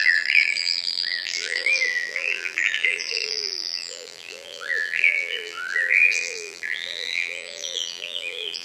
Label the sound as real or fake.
fake